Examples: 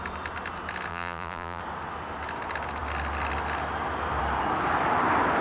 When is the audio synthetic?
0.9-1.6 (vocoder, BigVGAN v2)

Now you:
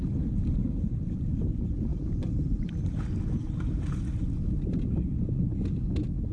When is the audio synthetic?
1.9-2.8 (vocoder, BigVGAN v2); 3.4-4.0

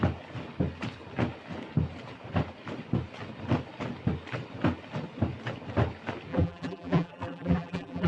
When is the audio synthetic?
6.3-8.1 (vocoder, BigVGAN v2)

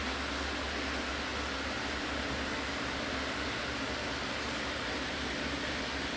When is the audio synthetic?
4.9-5.7 (vocoder, BigVGAN v2)